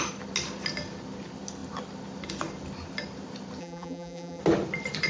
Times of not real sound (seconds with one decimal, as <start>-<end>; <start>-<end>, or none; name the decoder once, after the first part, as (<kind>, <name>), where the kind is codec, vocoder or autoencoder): 3.6-4.4 (vocoder, BigVGAN v2)